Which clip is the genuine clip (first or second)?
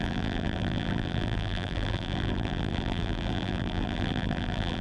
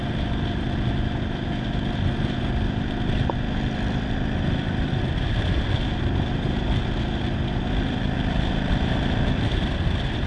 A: second